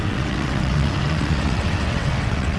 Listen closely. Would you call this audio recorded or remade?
remade